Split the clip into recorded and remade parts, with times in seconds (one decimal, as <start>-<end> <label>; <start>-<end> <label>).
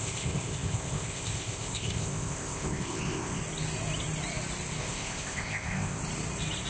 0.0-3.4 remade; 3.4-4.8 recorded; 4.8-6.0 remade; 6.0-6.7 recorded